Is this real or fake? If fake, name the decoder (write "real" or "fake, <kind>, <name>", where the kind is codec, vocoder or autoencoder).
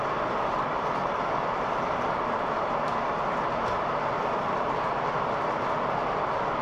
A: fake, vocoder, BigVGAN v2